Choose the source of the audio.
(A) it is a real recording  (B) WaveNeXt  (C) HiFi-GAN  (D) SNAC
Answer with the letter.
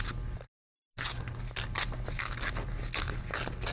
A